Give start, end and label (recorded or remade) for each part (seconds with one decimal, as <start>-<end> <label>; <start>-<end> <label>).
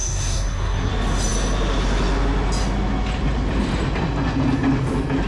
0.0-0.9 remade; 0.9-5.3 recorded